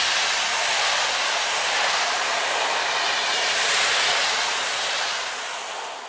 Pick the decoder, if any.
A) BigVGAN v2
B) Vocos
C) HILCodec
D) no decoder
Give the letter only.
D